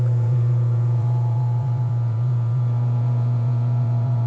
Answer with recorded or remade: remade